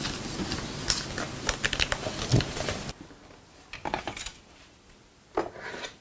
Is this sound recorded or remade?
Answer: recorded